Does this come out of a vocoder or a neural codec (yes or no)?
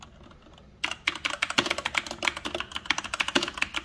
no